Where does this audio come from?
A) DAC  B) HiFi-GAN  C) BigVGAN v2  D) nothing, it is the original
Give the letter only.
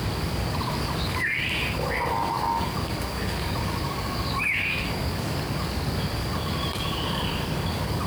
A